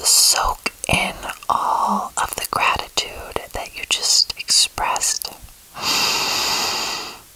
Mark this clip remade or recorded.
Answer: recorded